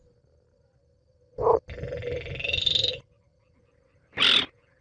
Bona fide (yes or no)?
yes